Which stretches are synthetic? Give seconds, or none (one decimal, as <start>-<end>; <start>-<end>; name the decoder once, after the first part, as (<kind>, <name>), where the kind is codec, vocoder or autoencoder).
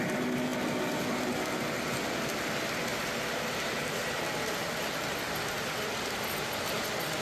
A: 2.8-4.8 (vocoder, BigVGAN v2)